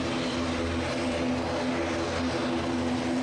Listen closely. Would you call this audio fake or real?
real